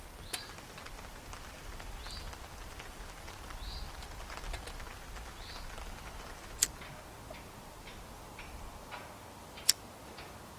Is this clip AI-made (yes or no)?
no